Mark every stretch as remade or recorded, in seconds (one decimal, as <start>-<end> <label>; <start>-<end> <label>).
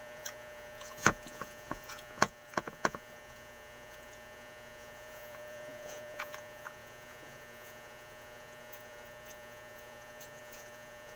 0.0-11.2 remade